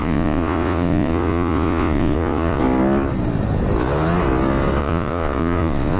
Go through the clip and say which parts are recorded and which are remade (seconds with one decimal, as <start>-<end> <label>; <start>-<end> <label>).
0.0-2.6 remade; 2.6-4.8 recorded; 4.8-6.0 remade